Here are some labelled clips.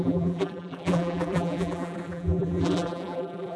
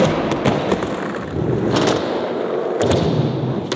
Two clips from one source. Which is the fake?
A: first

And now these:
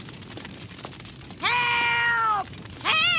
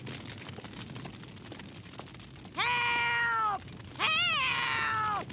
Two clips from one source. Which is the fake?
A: first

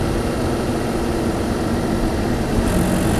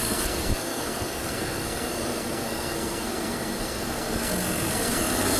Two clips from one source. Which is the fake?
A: second